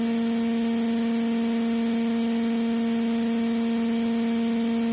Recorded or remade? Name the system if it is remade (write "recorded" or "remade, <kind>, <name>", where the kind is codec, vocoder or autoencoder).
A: recorded